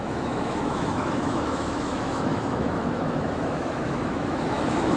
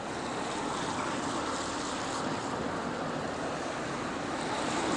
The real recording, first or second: second